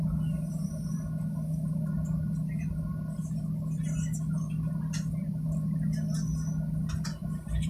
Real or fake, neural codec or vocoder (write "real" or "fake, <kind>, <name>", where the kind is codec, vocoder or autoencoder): real